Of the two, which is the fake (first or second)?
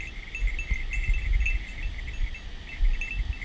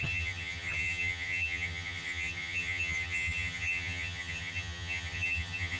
second